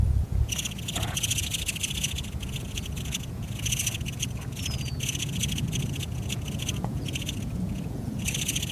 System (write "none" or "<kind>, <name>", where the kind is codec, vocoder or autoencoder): vocoder, Vocos